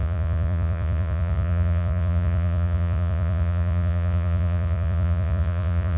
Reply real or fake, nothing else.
fake